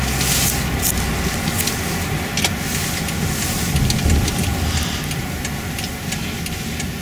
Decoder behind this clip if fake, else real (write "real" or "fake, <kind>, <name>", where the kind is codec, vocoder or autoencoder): real